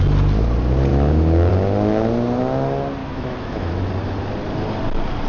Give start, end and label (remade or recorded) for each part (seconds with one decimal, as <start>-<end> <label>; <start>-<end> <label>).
0.0-0.9 recorded; 0.9-1.5 remade; 1.5-3.0 recorded; 3.0-3.9 remade; 3.9-5.3 recorded